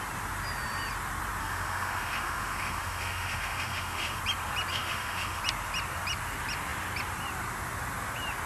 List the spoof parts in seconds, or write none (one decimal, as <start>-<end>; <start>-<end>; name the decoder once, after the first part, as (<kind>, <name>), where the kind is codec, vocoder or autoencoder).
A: 1.4-4.2 (autoencoder, DAC-VAE); 4.7-5.4